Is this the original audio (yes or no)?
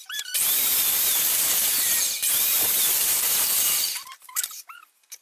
no